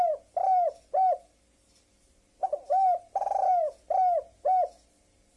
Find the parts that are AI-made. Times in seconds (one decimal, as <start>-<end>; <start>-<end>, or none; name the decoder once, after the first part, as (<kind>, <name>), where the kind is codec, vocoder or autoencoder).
none